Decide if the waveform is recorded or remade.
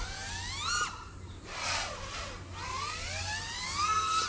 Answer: recorded